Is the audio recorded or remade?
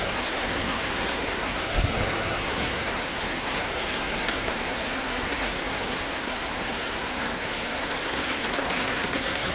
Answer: remade